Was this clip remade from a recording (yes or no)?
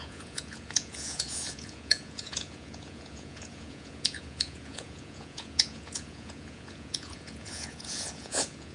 yes